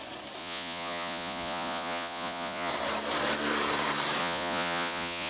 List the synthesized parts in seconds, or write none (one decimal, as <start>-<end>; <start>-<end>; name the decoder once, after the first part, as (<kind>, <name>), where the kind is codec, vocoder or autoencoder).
0.4-2.7 (vocoder, Vocos); 4.2-5.3